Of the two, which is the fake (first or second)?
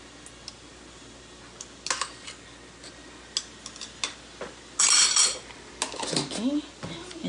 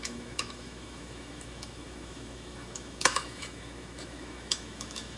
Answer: second